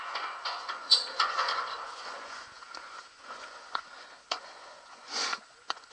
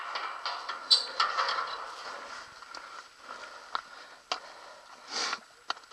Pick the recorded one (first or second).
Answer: second